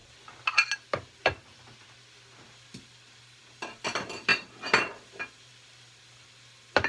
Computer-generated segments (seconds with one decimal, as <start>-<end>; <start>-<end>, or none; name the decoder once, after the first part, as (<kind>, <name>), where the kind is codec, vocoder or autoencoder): none